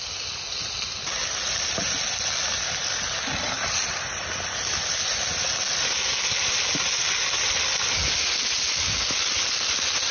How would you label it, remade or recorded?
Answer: recorded